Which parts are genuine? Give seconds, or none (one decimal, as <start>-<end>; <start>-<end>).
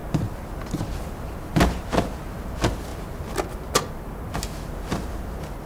0.0-5.7